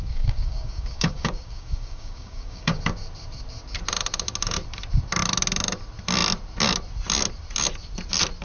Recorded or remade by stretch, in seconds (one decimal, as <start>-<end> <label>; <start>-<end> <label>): 0.0-2.8 remade; 2.8-8.4 recorded